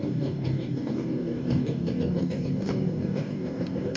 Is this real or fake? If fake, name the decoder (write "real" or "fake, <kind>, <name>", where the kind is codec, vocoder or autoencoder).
fake, codec, DAC